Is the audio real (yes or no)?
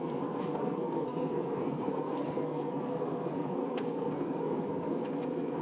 no